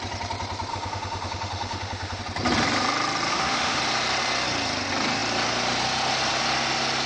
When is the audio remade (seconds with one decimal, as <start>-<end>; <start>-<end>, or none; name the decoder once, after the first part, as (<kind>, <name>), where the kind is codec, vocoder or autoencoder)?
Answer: 0.7-2.2 (autoencoder, DAC-VAE); 3.3-3.8